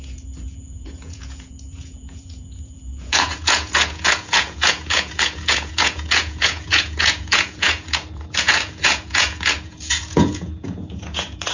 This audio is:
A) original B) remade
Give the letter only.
B